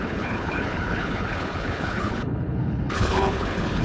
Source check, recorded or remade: remade